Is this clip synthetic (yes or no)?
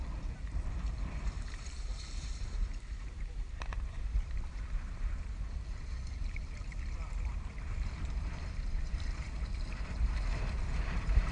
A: yes